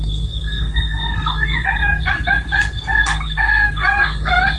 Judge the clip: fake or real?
fake